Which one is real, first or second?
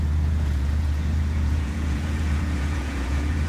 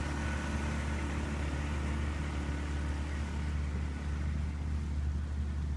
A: second